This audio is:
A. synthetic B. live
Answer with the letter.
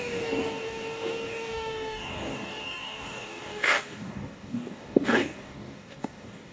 A